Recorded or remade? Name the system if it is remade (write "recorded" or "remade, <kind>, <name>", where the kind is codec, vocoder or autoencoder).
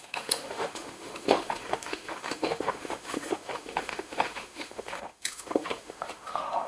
remade, autoencoder, DAC-VAE